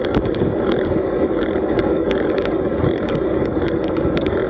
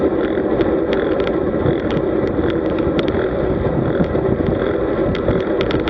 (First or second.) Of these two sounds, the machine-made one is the first